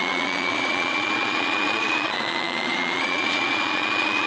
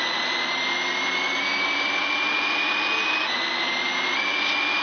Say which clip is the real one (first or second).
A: second